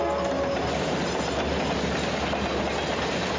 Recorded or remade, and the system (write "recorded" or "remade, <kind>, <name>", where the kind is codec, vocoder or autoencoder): recorded